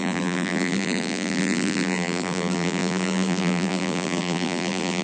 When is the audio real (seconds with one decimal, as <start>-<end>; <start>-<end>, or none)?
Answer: none